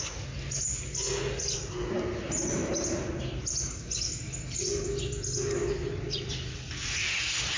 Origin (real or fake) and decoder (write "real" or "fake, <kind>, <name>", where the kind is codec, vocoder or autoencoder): real